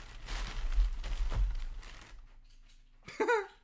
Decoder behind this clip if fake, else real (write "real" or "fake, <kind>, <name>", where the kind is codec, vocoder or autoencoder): real